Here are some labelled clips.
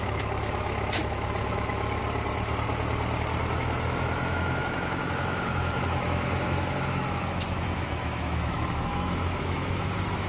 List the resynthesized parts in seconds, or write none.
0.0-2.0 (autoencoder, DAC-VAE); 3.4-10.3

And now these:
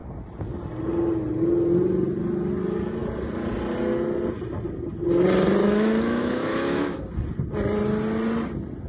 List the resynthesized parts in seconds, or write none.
5.6-7.0 (autoencoder, DAC-VAE)

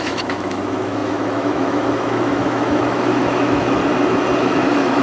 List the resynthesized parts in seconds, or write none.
0.0-3.8 (autoencoder, DAC-VAE); 4.4-5.0

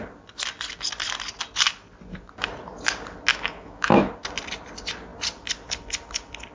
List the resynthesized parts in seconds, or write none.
3.3-4.1 (autoencoder, DAC-VAE)

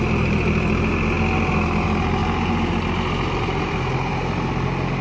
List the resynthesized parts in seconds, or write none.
none

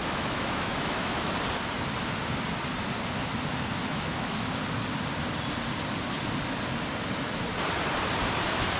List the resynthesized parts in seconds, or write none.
0.0-1.3 (autoencoder, DAC-VAE); 3.8-4.6

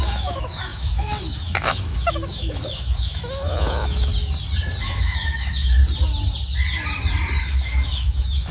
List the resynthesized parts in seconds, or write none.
0.0-4.1 (autoencoder, DAC-VAE); 4.8-5.8; 7.4-8.5